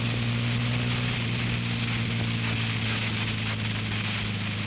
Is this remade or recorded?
recorded